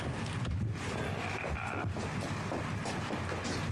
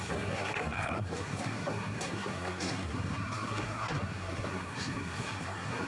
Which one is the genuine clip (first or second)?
first